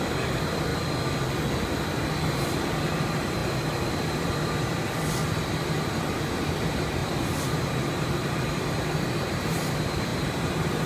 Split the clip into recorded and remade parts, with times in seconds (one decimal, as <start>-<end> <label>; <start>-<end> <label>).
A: 0.0-0.7 remade; 0.7-2.4 recorded; 2.4-3.4 remade; 3.4-6.3 recorded; 6.3-7.0 remade; 7.0-7.8 recorded; 7.8-10.9 remade